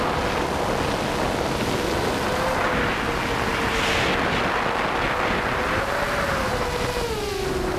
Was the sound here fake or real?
real